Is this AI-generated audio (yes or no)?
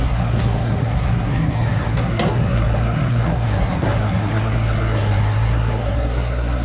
yes